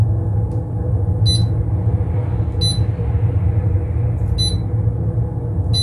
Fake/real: real